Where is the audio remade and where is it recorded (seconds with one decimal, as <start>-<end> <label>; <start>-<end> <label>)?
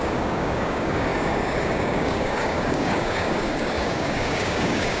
0.0-5.0 remade